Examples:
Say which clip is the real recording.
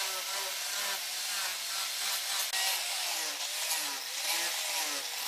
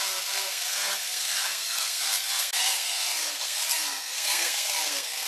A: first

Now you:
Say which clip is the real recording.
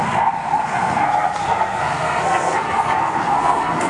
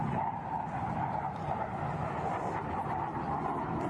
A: second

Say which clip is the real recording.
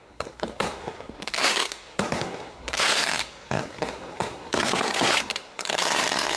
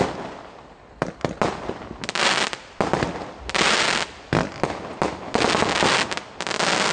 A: second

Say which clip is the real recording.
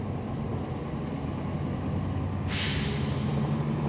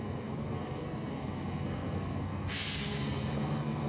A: first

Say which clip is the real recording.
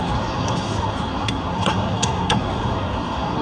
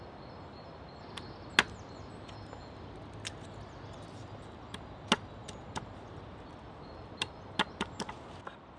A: second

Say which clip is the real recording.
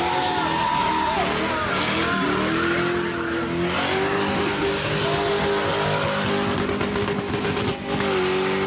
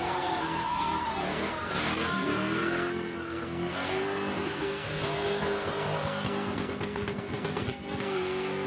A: first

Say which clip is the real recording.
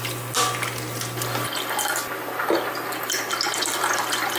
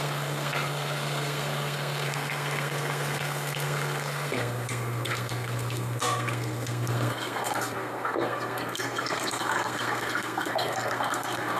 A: first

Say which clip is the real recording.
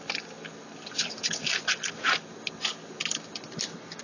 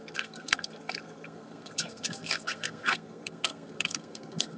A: first